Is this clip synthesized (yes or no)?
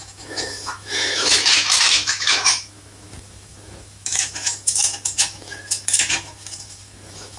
yes